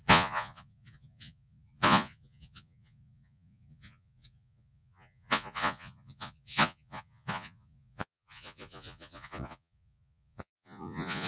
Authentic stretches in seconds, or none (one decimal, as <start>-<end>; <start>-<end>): none

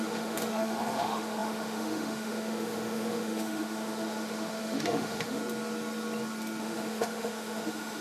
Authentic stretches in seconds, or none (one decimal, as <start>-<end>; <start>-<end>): 5.4-6.6

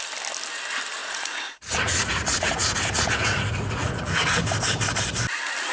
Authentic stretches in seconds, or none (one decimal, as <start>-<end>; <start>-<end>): 0.0-1.0; 4.4-5.7

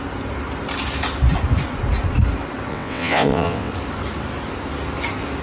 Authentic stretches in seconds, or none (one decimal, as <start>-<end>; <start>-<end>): 0.0-2.7; 3.7-5.4